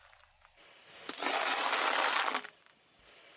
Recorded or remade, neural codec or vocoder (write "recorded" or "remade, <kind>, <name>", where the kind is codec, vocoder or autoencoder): recorded